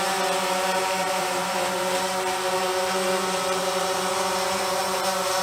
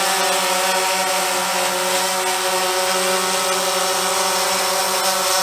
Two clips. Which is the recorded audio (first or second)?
second